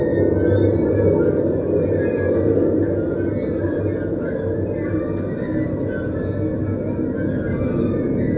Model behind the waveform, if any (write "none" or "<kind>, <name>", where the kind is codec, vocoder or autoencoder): none